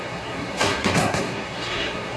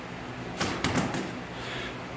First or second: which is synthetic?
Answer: first